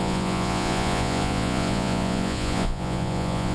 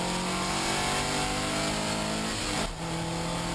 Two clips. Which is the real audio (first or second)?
second